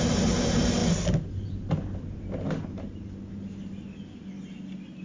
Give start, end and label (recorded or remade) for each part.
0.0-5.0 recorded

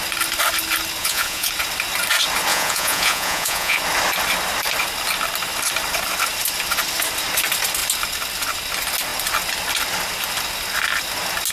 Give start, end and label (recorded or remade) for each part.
0.0-1.0 recorded; 1.0-1.5 remade; 1.5-2.5 recorded; 2.5-3.8 remade; 3.8-11.5 recorded

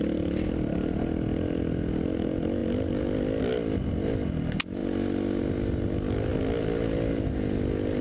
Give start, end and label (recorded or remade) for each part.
0.0-8.0 recorded